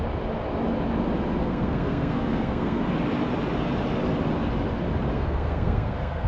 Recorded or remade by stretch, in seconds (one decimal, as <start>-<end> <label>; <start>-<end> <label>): 0.0-1.4 recorded; 1.4-2.8 remade; 2.8-5.1 recorded; 5.1-6.3 remade